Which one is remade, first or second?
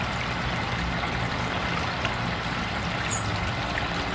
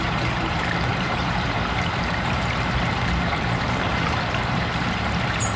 second